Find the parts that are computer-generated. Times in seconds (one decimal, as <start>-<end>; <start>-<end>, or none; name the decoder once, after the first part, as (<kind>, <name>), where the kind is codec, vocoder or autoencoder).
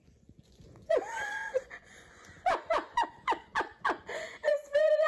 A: 0.0-5.1 (vocoder, Vocos)